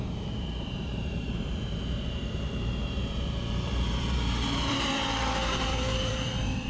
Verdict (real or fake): fake